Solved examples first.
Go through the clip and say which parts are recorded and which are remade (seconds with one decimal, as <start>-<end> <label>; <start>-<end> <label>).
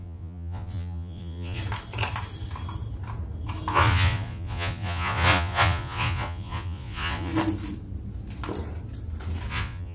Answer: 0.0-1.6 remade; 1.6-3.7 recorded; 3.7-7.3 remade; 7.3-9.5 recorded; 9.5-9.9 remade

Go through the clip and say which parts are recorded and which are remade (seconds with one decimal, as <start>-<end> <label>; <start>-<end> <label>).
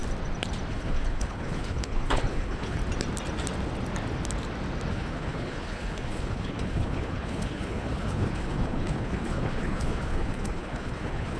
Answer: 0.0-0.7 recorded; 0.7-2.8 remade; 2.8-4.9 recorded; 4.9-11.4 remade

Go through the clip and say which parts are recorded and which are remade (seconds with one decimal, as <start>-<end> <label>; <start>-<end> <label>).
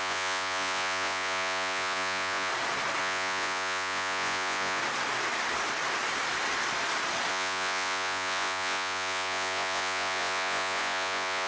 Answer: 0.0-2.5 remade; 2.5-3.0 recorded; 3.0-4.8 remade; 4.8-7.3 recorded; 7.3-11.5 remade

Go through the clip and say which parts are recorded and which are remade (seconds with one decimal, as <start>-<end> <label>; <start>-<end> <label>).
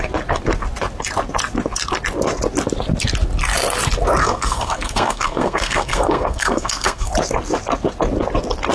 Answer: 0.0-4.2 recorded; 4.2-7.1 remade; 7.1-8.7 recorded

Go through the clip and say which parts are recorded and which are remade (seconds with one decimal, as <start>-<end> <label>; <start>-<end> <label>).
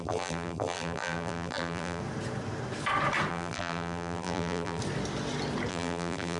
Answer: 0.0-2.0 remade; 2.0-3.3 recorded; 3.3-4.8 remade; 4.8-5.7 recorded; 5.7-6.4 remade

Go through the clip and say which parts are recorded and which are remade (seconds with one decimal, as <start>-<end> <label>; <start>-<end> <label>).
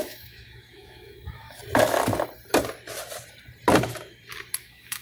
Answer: 0.0-1.6 remade; 1.6-4.6 recorded; 4.6-5.0 remade